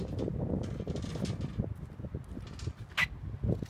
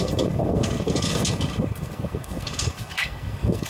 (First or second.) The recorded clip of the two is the first